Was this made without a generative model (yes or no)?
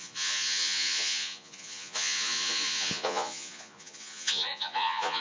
no